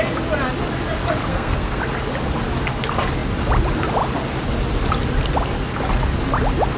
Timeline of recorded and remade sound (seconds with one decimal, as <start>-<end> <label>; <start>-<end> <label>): 0.0-1.3 recorded; 1.3-1.8 remade; 1.8-6.8 recorded